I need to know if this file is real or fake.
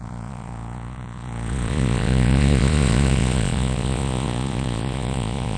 fake